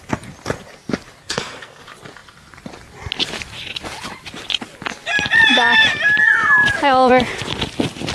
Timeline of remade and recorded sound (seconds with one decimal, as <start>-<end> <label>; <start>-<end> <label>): 0.0-1.2 recorded; 1.2-1.8 remade; 1.8-8.1 recorded